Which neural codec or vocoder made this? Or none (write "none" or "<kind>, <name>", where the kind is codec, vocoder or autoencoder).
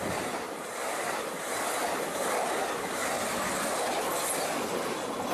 none